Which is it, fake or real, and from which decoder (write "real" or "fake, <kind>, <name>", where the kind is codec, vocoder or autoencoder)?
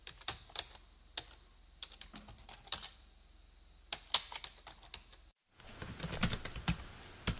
real